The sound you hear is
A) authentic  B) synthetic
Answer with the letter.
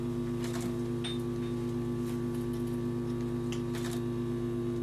A